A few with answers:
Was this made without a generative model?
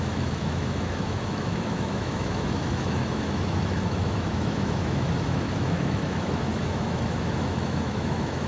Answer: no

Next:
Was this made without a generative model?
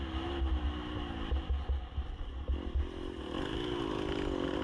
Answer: yes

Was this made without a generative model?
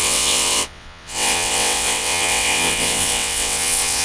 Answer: no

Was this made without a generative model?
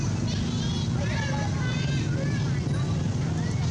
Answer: yes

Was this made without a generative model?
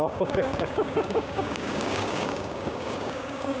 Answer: no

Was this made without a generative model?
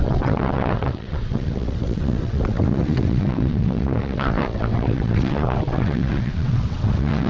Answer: no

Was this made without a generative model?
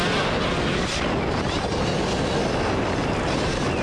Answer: yes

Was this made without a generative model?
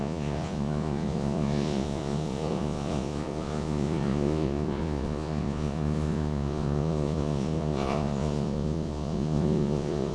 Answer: no